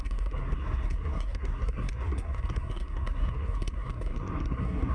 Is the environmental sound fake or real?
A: fake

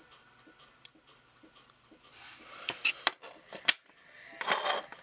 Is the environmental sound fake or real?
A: real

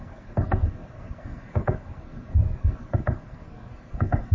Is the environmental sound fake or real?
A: fake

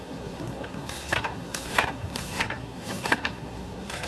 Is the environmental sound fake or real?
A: fake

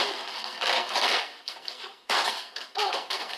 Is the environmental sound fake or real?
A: fake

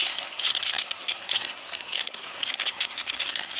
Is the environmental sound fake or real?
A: fake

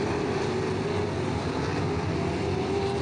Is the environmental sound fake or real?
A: real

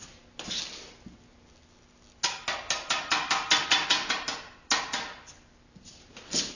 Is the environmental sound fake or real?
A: real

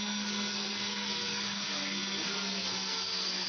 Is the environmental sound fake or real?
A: fake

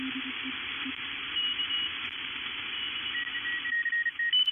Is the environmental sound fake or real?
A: real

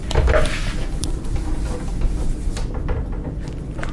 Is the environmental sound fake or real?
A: real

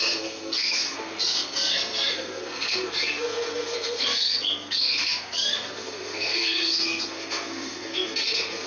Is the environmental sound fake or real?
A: fake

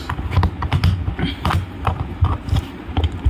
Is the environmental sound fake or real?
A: real